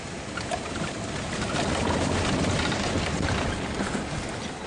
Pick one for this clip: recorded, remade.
recorded